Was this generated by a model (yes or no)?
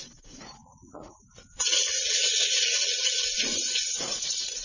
yes